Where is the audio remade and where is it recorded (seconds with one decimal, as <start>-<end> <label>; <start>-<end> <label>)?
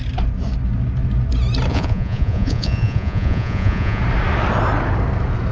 0.0-1.7 recorded; 1.7-4.0 remade; 4.0-5.5 recorded